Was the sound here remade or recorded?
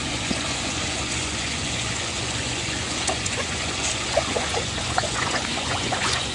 remade